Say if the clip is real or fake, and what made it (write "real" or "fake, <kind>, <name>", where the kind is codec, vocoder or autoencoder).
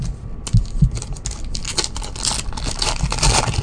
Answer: real